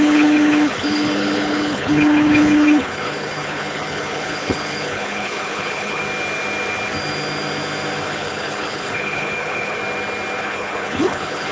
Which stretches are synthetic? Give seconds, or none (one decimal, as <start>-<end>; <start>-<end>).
0.0-6.0; 8.0-9.8; 10.4-11.5